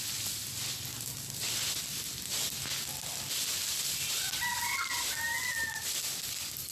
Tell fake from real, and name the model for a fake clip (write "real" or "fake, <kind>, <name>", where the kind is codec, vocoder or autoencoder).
real